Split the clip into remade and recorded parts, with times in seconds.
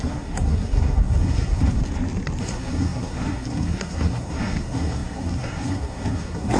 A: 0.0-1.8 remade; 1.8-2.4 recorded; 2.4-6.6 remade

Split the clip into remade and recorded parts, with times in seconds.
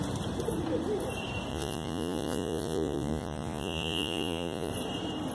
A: 0.0-1.5 recorded; 1.5-4.7 remade; 4.7-5.3 recorded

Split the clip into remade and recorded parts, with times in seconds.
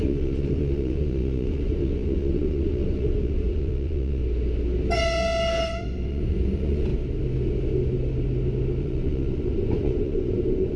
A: 0.0-4.2 remade; 4.2-6.1 recorded; 6.1-6.9 remade; 6.9-8.8 recorded; 8.8-10.8 remade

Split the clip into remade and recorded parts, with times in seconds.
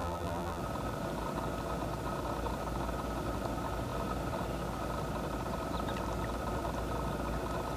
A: 0.0-0.6 remade; 0.6-7.8 recorded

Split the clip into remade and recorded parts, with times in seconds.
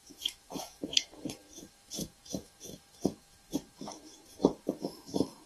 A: 0.0-5.5 remade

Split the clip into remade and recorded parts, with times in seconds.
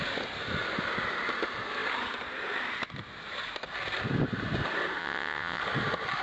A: 0.0-5.0 recorded; 5.0-5.6 remade; 5.6-6.2 recorded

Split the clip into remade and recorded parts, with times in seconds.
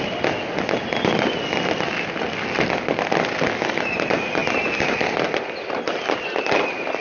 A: 0.0-7.0 recorded